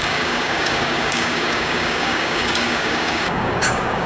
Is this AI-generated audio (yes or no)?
yes